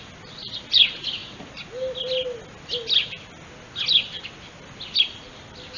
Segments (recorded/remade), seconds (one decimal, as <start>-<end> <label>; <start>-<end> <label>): 0.0-5.8 recorded